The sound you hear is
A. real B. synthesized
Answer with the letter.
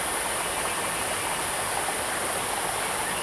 A